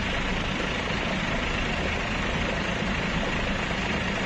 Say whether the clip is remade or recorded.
recorded